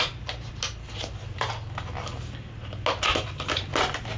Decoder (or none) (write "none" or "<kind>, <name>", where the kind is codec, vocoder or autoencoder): none